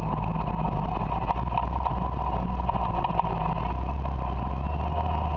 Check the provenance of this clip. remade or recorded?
recorded